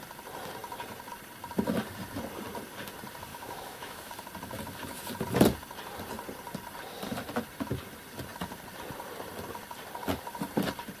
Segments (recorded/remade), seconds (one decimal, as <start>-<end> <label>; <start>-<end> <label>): 0.0-3.3 recorded; 3.3-4.1 remade; 4.1-11.0 recorded